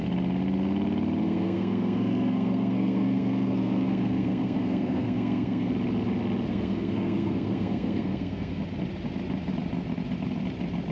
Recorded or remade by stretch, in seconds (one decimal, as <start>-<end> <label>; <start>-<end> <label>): 0.0-1.2 recorded; 1.2-5.7 remade; 5.7-6.5 recorded; 6.5-8.6 remade; 8.6-10.9 recorded